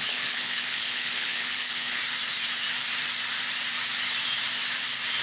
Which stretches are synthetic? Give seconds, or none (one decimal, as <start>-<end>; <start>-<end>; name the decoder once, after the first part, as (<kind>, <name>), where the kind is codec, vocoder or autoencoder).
0.0-2.0 (codec, HILCodec)